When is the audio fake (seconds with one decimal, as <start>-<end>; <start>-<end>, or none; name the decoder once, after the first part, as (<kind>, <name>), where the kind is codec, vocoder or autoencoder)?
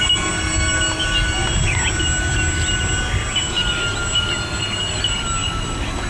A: none